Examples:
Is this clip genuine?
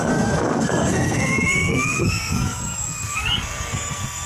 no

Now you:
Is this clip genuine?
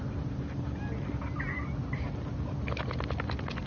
yes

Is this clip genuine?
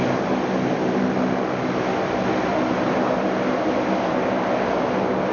yes